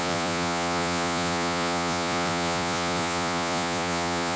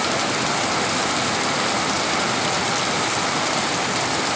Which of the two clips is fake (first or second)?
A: first